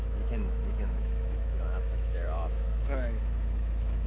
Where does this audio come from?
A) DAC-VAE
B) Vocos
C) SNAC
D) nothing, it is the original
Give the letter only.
A